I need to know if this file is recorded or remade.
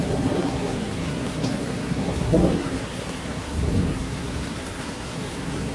remade